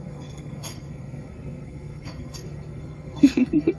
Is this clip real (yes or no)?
no